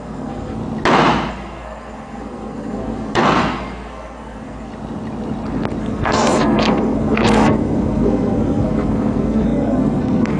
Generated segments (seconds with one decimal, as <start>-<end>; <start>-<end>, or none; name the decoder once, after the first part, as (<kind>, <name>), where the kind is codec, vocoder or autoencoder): 0.0-0.6 (codec, SNAC); 1.3-4.7; 5.8-10.4